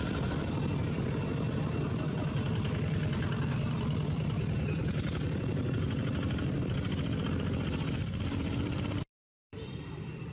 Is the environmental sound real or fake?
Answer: fake